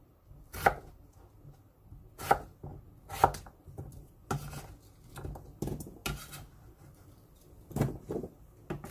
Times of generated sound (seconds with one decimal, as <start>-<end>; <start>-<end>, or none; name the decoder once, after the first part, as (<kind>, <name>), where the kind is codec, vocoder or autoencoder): none